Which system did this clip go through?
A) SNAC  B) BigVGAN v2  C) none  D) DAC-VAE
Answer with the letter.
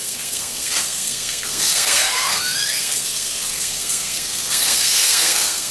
A